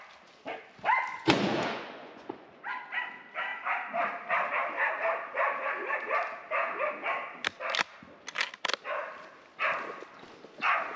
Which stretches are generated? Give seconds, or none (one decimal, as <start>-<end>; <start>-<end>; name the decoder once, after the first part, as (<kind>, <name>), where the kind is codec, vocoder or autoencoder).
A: 1.1-2.8 (vocoder, Vocos)

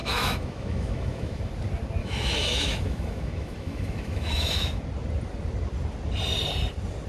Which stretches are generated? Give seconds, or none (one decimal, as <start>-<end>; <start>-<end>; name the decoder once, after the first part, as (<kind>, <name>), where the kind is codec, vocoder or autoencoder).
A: 0.0-1.4 (autoencoder, DAC-VAE); 2.0-4.8

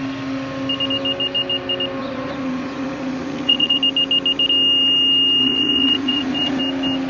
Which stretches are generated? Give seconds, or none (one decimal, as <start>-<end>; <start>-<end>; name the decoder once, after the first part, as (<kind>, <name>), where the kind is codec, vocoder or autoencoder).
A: 2.0-3.8 (vocoder, Vocos); 5.4-6.6

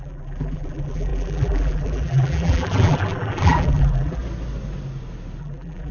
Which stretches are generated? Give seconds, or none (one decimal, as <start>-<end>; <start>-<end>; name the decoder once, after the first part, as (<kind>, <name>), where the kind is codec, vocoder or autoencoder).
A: 0.0-4.2 (vocoder, BigVGAN v2); 5.4-5.9

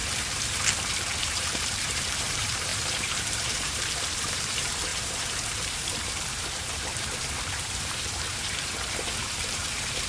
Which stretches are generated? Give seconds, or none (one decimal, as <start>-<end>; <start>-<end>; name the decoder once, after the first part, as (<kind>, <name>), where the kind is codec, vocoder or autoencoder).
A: 1.2-10.1 (vocoder, BigVGAN v2)

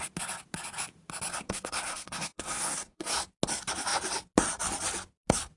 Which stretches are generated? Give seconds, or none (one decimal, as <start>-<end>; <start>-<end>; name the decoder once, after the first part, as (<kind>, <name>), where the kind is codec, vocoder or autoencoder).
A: 1.3-3.1 (codec, SNAC)

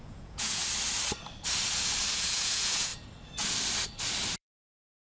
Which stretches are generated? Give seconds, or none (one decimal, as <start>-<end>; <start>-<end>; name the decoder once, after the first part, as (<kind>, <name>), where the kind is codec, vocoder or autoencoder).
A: 0.0-0.6 (vocoder, Vocos); 2.1-2.9; 4.4-5.2

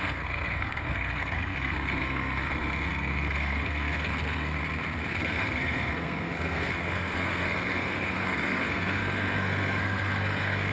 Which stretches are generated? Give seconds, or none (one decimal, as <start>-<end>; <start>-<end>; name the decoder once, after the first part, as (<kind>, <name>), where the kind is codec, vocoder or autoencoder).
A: 0.0-4.6 (codec, SNAC); 5.1-10.7